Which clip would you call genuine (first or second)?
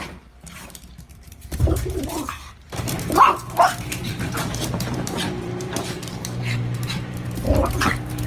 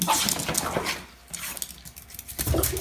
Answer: second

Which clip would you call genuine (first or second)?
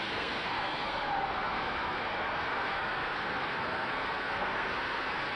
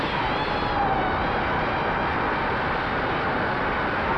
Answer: second